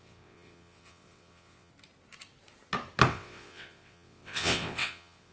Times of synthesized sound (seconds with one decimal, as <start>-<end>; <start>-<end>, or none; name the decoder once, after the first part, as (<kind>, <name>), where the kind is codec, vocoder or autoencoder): 0.0-1.7 (vocoder, WaveNeXt); 3.1-5.3